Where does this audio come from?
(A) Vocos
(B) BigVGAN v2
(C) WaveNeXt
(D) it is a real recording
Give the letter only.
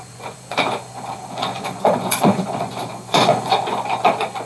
A